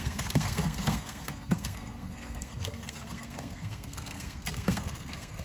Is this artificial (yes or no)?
yes